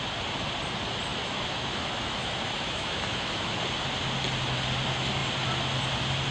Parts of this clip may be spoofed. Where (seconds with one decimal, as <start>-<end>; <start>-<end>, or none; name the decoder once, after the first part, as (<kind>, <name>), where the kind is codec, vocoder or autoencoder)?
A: 1.1-3.5 (autoencoder, DAC-VAE)